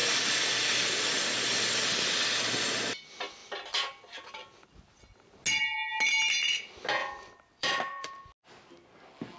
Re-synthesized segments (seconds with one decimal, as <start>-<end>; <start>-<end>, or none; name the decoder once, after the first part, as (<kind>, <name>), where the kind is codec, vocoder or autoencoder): 3.4-4.7 (vocoder, BigVGAN v2); 7.0-8.2